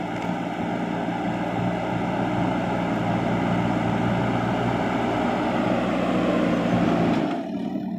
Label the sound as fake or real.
real